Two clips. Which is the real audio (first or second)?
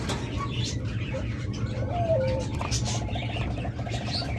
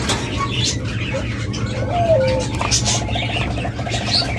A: second